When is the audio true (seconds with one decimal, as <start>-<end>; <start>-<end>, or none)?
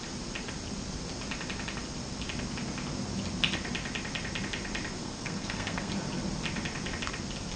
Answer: 0.0-5.0; 5.9-7.6